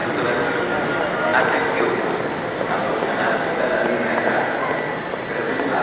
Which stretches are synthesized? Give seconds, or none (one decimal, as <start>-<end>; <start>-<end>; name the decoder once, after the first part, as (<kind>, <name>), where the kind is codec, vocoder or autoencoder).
none